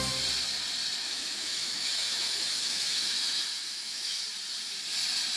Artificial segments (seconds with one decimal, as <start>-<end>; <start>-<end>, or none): 1.0-4.2